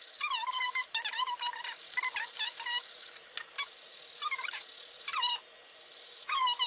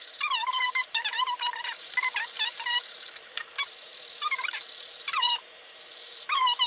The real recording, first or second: first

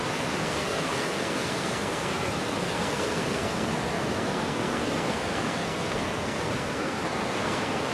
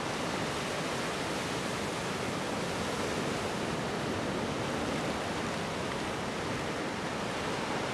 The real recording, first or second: second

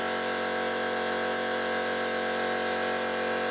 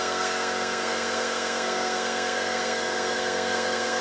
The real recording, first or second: first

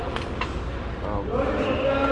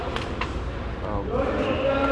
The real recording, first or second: first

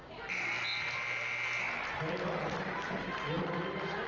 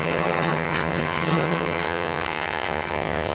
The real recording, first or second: first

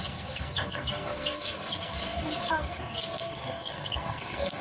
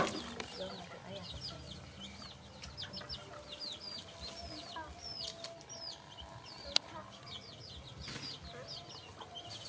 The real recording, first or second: second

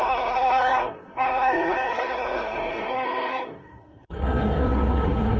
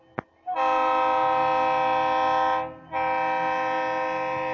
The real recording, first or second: second